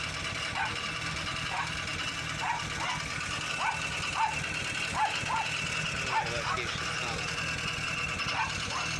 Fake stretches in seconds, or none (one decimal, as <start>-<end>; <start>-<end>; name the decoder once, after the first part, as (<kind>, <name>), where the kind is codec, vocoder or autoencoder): none